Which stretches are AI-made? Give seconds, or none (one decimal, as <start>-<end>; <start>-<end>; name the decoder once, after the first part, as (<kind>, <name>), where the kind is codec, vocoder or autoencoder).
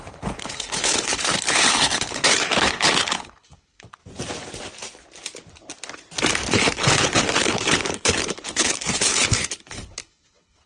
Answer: 0.0-4.0 (codec, HILCodec); 6.5-10.7